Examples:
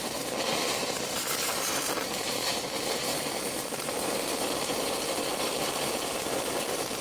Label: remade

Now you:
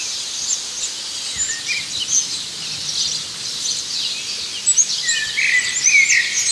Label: recorded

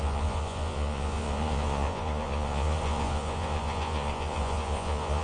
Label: remade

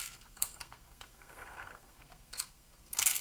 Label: remade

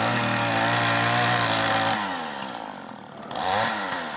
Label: recorded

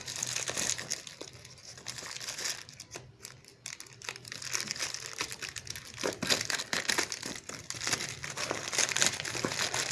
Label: recorded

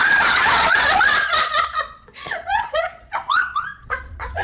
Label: remade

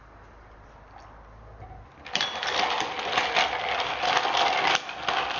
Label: recorded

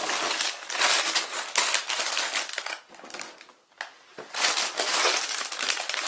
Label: recorded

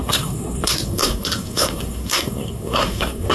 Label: remade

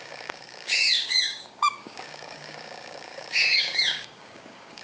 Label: remade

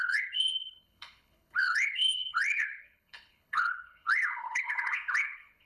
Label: remade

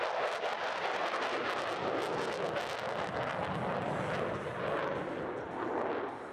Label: recorded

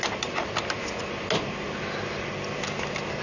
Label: recorded